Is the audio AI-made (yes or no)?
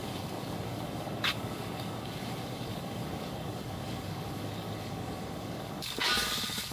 yes